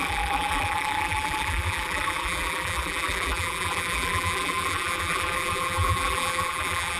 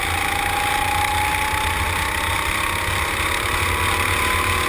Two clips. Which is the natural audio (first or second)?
second